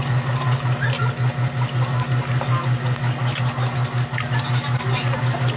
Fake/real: real